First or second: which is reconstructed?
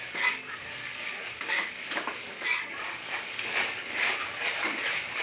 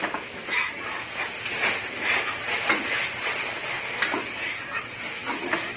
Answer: first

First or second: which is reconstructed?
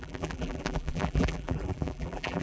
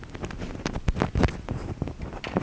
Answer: first